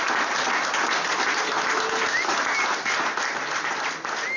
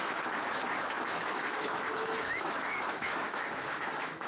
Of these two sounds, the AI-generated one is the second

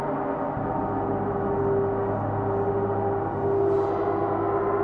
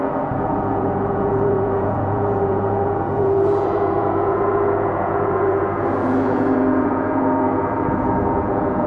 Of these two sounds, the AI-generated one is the second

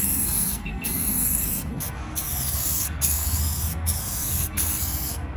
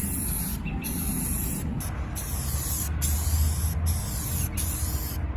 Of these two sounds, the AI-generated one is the first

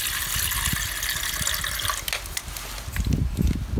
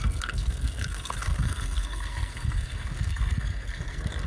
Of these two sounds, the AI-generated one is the second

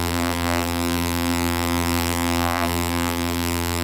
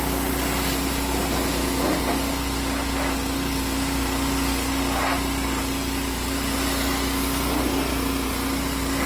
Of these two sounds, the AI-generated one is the first